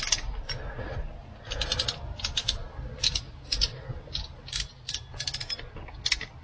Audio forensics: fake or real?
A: real